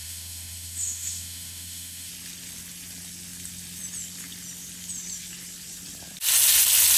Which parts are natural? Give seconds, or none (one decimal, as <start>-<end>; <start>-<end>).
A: 2.1-7.0